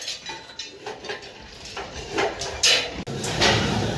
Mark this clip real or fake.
real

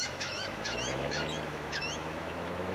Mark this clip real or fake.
fake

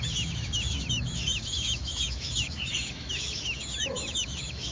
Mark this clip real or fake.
fake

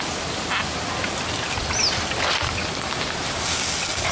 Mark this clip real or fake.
real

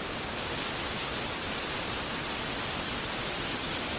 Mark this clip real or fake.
real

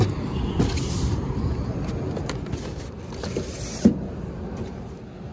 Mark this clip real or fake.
real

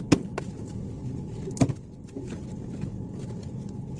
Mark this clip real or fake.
real